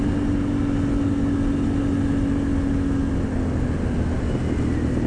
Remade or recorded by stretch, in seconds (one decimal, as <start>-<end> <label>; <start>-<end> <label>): 0.0-5.1 recorded